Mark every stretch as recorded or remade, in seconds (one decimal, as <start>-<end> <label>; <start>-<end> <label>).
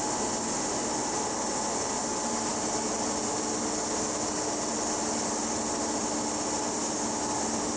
0.0-7.8 recorded